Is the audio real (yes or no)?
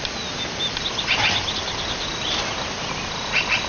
yes